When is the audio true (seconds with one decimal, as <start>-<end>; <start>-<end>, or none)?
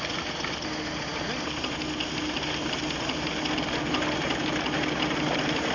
0.0-5.7